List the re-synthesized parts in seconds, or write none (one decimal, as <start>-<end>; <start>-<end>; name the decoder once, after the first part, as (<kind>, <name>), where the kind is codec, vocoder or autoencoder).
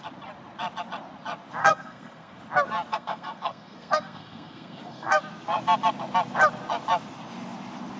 1.6-2.4 (codec, SNAC); 2.9-5.2